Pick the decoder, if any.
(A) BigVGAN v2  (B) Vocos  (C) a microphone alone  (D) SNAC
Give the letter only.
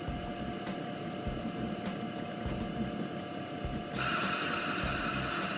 C